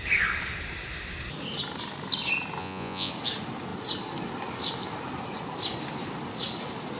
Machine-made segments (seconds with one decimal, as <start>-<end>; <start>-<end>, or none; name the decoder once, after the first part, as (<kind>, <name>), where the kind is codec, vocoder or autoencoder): 2.6-3.1 (vocoder, Vocos)